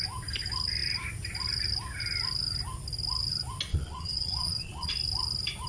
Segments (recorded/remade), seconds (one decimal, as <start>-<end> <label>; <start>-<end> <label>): 0.0-3.7 recorded; 3.7-4.9 remade; 4.9-5.7 recorded